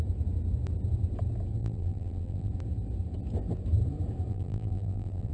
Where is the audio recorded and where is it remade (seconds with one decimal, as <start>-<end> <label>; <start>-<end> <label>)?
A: 0.0-1.6 recorded; 1.6-2.5 remade; 2.5-4.3 recorded; 4.3-5.3 remade